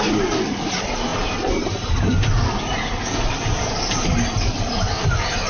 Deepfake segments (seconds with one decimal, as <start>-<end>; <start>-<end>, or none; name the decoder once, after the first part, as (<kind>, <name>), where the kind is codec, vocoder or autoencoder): none